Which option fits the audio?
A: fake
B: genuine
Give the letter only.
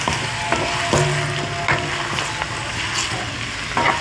B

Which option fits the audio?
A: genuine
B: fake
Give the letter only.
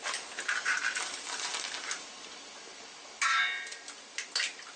A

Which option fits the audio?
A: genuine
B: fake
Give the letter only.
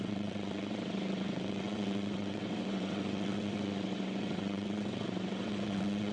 B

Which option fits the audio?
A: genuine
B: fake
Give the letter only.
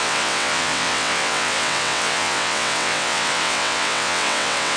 B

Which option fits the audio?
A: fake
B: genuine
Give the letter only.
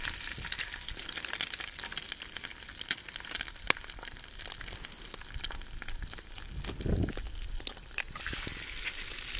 B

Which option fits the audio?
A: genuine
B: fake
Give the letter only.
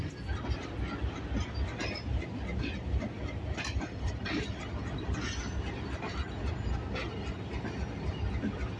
A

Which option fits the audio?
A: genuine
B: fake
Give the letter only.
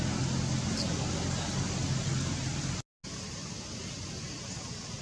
A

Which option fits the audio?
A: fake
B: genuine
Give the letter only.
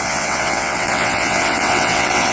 A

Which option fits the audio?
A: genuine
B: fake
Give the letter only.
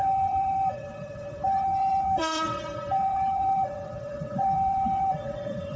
B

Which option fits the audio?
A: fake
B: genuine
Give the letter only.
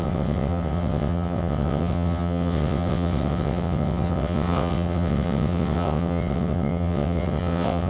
A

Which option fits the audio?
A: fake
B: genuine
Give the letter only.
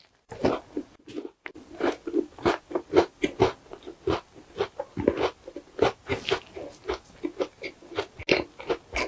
B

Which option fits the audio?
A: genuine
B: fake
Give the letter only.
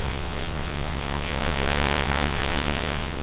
B